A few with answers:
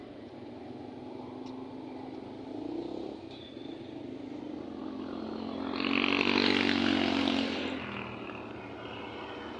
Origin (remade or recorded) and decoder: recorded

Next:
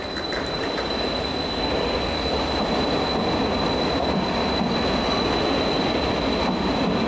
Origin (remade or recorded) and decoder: recorded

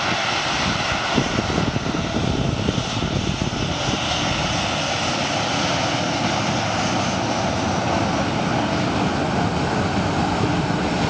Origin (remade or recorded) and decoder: recorded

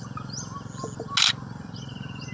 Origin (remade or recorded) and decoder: recorded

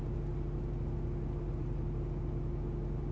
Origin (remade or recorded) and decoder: recorded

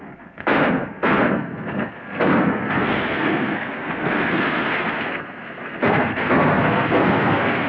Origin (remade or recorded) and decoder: remade, codec, SNAC